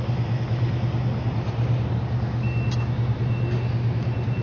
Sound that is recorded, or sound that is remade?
recorded